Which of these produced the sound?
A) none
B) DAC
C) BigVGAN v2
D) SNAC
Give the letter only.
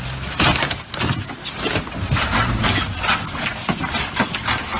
A